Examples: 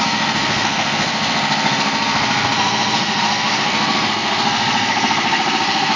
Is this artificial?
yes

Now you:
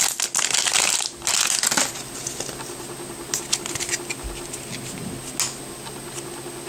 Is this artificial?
no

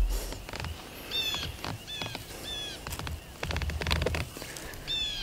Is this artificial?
no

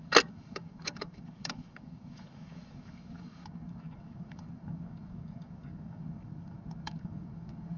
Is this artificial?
yes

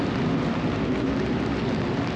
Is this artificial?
no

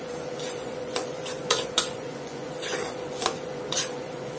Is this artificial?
yes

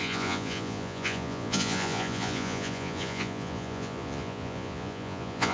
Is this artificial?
yes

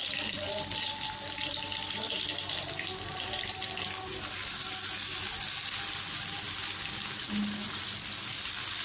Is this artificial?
no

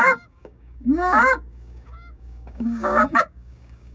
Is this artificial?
yes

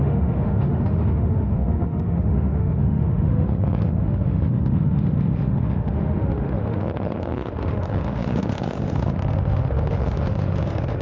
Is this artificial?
yes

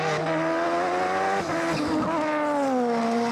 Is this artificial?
no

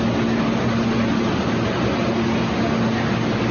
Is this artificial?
no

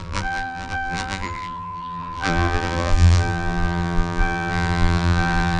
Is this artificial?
yes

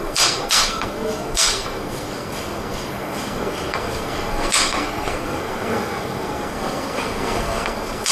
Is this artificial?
yes